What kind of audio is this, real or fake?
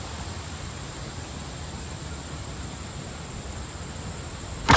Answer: real